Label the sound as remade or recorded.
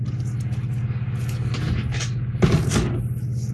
recorded